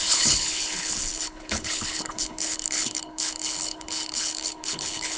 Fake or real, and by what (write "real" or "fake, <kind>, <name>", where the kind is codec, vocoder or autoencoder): fake, codec, HILCodec